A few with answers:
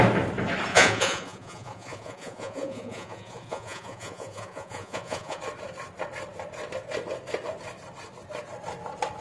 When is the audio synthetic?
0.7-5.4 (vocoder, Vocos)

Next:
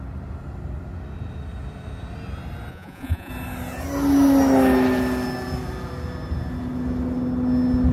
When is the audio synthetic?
2.7-3.3 (vocoder, Vocos)

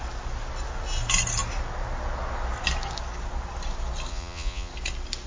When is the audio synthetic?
4.1-4.7 (vocoder, Vocos)

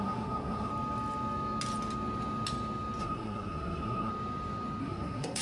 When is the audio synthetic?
0.0-0.7 (codec, SNAC); 3.0-4.1; 4.8-5.4

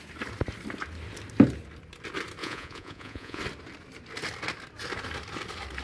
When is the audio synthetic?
2.4-3.4 (vocoder, Vocos)

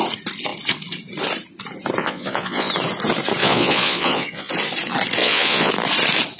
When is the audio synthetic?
2.0-2.7 (vocoder, Vocos); 3.4-4.5; 5.2-5.7

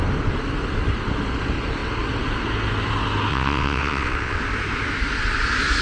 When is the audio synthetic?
3.3-4.4 (vocoder, WaveNeXt)